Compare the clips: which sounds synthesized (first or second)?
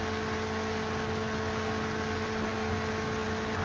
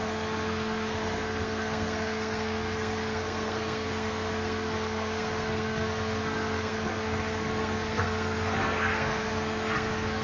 second